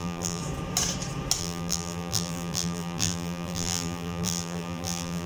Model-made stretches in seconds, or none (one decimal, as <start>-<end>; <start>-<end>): 0.0-0.4; 1.4-5.3